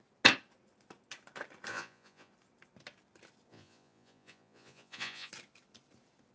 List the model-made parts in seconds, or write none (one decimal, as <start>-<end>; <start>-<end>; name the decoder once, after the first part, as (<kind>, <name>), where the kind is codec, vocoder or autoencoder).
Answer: 1.7-2.3 (vocoder, Vocos); 3.5-5.3